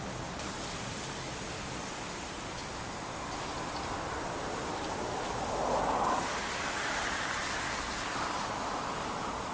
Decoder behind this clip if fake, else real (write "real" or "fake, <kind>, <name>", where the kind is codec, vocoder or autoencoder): real